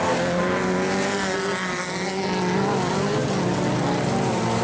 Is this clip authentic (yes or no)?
yes